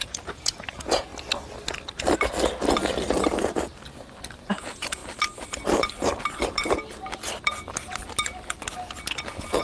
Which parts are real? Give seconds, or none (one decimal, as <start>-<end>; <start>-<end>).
1.1-4.4; 5.0-9.6